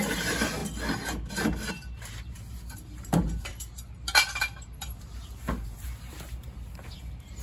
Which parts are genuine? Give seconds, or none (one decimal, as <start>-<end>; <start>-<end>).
0.6-1.7